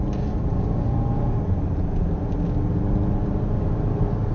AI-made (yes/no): no